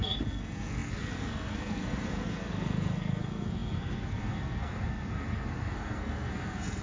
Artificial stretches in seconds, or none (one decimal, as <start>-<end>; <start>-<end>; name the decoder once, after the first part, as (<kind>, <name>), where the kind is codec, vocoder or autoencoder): 0.0-6.8 (codec, SNAC)